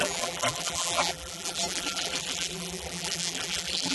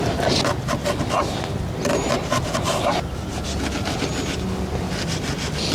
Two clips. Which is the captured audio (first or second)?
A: second